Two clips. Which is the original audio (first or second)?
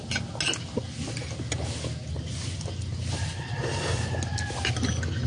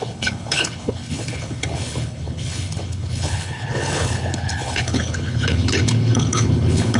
first